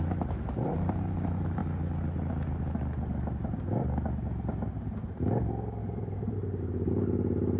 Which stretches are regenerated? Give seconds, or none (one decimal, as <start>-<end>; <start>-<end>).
0.0-1.6; 5.8-7.6